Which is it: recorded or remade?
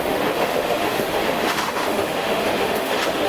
remade